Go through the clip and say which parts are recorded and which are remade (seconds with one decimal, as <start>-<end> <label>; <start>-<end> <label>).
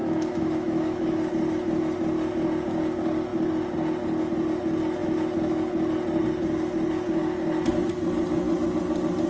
0.0-1.3 remade; 1.3-9.3 recorded